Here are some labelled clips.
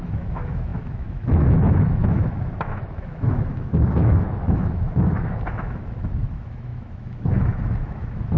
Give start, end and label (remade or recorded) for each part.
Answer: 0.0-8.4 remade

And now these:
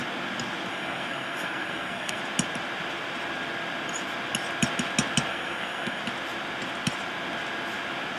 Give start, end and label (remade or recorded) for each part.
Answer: 0.0-0.7 recorded; 0.7-2.2 remade; 2.2-5.3 recorded; 5.3-6.0 remade; 6.0-8.2 recorded

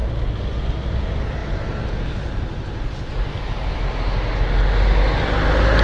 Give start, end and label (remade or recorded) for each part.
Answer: 0.0-5.8 recorded